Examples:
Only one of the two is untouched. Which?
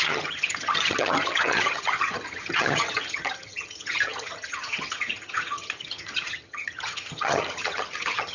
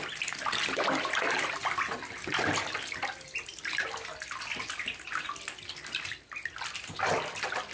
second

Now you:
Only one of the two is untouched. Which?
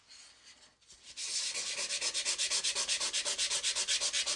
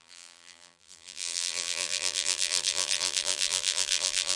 first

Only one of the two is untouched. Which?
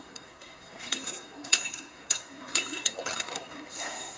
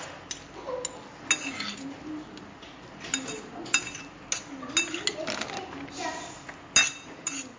second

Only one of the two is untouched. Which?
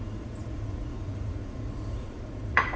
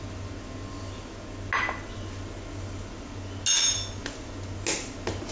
second